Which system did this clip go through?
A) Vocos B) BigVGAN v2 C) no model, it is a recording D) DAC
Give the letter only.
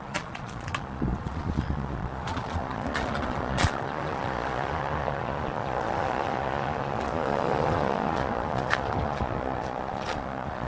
A